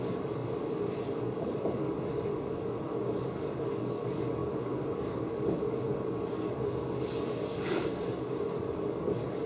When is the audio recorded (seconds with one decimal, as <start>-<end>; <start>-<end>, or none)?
none